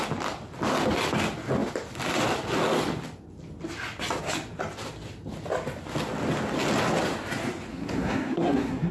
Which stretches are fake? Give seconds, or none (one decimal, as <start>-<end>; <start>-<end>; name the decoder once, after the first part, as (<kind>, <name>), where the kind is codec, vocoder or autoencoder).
7.7-8.9 (codec, SNAC)